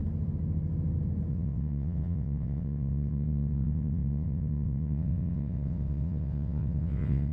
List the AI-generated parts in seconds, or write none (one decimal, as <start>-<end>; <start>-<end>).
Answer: 1.3-7.3